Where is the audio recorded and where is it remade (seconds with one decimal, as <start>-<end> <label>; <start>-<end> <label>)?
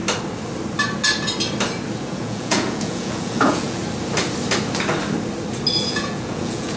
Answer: 0.0-2.1 recorded; 2.1-3.8 remade; 3.8-5.7 recorded; 5.7-6.8 remade